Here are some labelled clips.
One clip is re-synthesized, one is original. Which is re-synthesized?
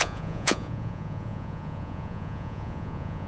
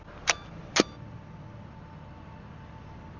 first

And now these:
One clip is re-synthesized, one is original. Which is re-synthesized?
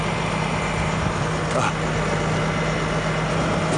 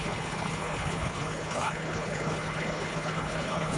second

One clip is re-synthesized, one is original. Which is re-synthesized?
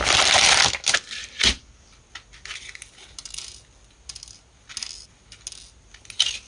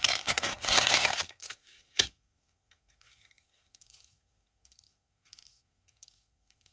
second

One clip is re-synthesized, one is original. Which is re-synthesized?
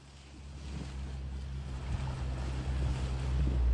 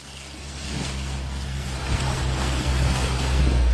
second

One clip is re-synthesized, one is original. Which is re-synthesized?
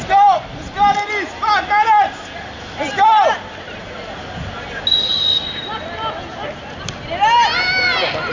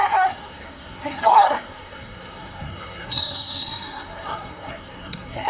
second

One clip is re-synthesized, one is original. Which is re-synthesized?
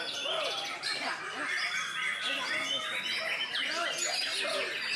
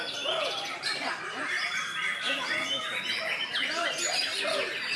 second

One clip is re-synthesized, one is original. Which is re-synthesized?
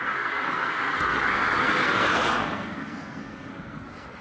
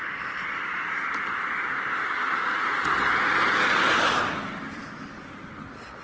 first